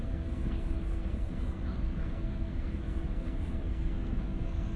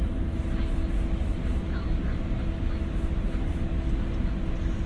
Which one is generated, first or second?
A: first